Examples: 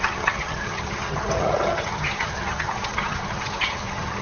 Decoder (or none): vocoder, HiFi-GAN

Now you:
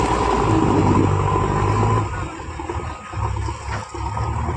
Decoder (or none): none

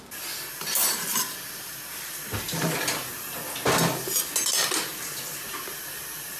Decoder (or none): none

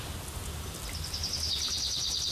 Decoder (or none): none